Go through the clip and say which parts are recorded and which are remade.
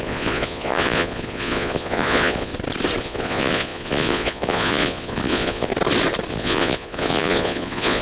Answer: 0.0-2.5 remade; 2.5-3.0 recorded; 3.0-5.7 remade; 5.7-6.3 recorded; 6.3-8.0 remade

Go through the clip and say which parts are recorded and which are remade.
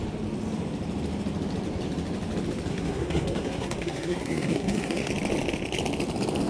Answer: 0.0-2.7 recorded; 2.7-5.1 remade; 5.1-6.5 recorded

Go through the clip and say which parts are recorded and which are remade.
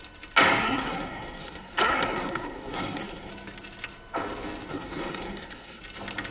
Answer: 0.0-0.6 recorded; 0.6-3.3 remade; 3.3-4.7 recorded; 4.7-5.8 remade; 5.8-6.3 recorded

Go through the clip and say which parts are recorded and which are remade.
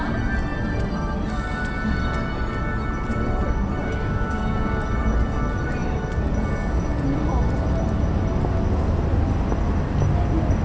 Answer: 0.0-3.8 recorded; 3.8-4.8 remade; 4.8-10.6 recorded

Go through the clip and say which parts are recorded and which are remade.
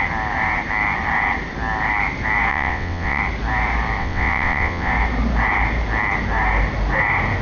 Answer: 0.0-2.5 recorded; 2.5-3.2 remade; 3.2-4.0 recorded; 4.0-4.9 remade; 4.9-7.4 recorded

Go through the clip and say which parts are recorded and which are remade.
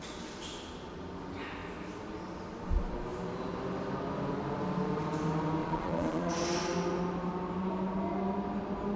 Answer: 0.0-5.6 recorded; 5.6-6.3 remade; 6.3-9.0 recorded